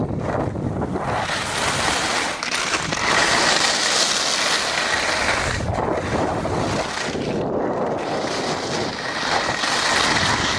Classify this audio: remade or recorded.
recorded